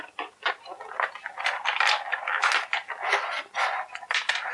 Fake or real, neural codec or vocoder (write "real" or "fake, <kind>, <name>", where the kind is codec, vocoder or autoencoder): real